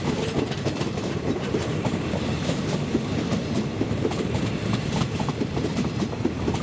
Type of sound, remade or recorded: remade